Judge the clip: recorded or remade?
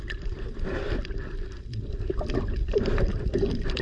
recorded